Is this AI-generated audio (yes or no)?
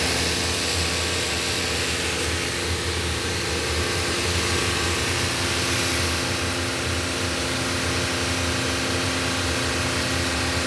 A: no